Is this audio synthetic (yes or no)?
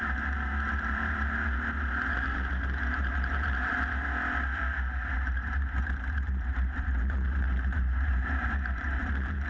yes